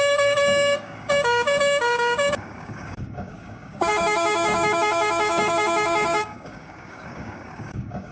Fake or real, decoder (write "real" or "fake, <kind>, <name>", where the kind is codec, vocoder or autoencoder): fake, codec, DAC